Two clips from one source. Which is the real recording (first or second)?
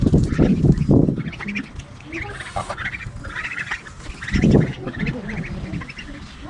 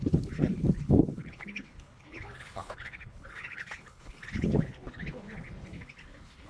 first